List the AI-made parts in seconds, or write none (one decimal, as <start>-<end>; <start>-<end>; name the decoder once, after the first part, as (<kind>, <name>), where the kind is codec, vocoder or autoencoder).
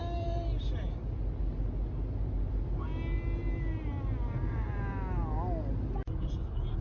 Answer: 0.0-0.8 (vocoder, BigVGAN v2)